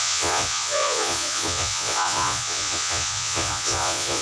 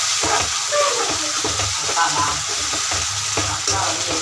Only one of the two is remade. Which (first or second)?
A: first